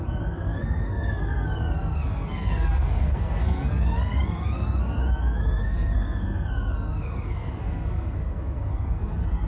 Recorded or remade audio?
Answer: remade